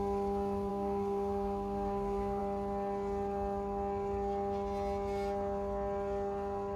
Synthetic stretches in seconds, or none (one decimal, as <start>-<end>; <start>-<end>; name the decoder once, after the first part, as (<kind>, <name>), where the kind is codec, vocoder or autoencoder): 0.7-2.4 (codec, SNAC)